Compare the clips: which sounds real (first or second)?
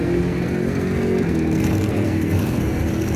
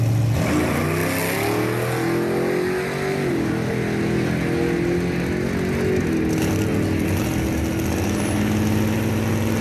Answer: second